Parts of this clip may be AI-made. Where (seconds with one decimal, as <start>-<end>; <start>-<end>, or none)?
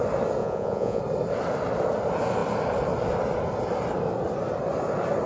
0.4-1.0